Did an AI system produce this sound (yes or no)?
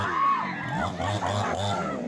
no